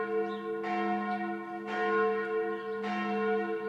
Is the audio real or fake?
real